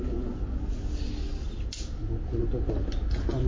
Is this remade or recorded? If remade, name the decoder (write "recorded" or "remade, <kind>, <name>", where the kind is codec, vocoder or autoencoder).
recorded